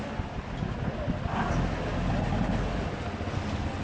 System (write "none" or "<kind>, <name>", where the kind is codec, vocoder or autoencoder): none